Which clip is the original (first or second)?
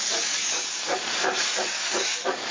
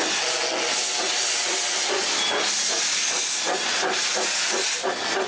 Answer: second